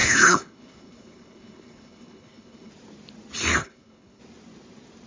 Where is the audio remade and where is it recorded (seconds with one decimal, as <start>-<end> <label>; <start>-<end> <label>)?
0.0-2.7 remade; 2.7-3.6 recorded; 3.6-4.2 remade; 4.2-5.1 recorded